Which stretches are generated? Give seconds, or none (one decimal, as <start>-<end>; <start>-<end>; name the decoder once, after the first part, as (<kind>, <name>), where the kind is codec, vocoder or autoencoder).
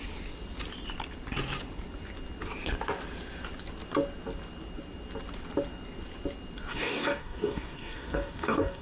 6.7-8.8 (codec, DAC)